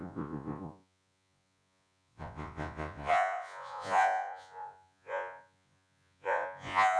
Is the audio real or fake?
fake